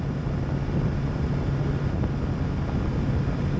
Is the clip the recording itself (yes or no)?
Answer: yes